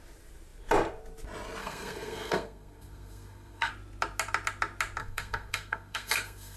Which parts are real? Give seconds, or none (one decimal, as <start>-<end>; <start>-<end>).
0.0-1.6; 3.7-5.0